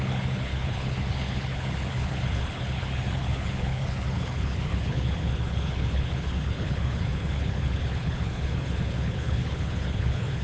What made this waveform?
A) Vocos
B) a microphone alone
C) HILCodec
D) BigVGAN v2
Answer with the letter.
C